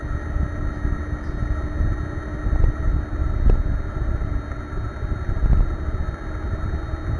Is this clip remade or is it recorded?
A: recorded